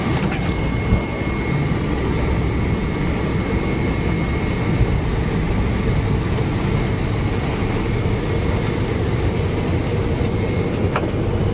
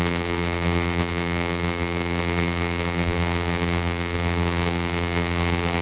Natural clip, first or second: first